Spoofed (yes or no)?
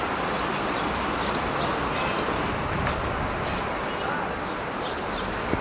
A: no